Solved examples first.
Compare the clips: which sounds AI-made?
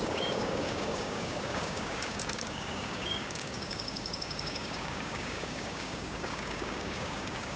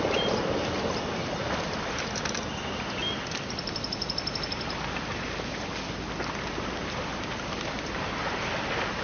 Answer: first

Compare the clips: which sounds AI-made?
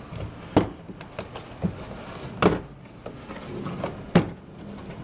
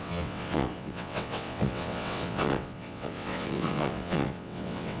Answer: second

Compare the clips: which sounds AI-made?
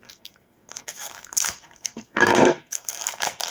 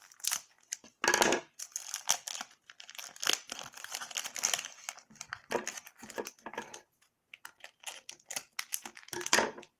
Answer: first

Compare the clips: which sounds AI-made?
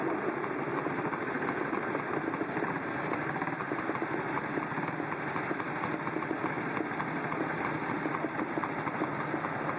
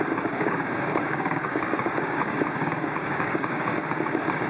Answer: second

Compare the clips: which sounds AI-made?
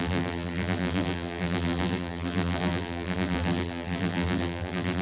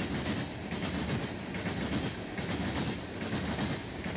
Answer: first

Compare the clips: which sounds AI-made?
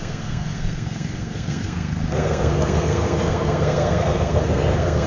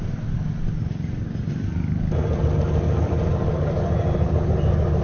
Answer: first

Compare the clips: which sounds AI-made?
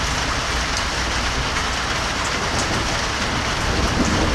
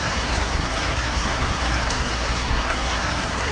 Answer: second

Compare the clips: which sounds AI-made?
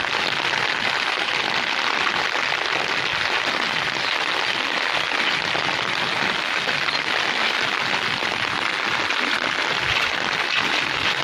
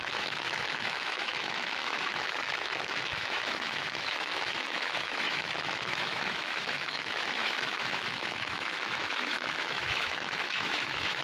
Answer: second